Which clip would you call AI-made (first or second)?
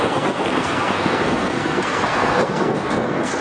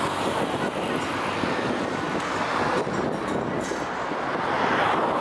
first